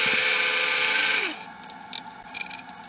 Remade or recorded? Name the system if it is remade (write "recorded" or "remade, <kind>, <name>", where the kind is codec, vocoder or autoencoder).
recorded